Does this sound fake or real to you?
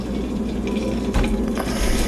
real